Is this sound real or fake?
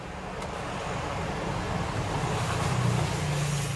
real